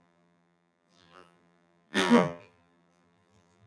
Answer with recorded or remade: remade